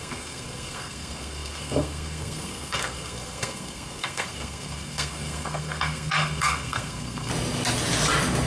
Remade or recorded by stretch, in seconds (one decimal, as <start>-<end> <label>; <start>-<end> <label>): 0.0-7.3 remade; 7.3-8.5 recorded